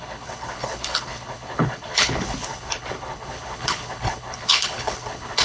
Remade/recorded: remade